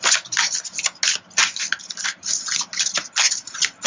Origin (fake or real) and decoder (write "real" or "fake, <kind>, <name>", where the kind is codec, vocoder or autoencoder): real